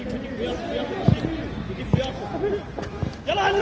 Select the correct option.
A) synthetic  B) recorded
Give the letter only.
B